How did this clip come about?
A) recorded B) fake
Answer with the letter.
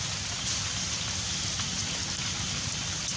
A